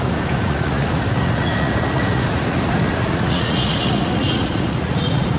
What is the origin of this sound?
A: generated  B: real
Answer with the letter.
A